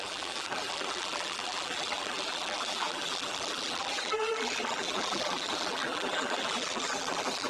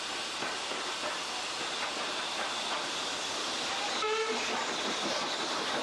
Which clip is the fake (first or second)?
first